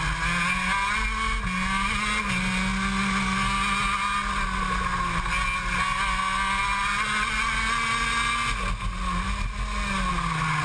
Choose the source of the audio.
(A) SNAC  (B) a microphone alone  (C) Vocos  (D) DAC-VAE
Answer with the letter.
B